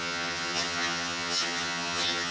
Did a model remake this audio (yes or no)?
yes